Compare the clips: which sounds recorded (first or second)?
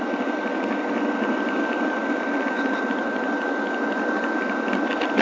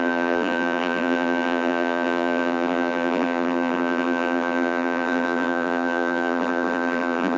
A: first